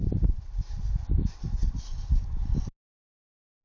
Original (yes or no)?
yes